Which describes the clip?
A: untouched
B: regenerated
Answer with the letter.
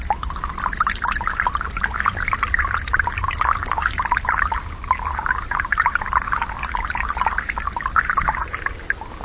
A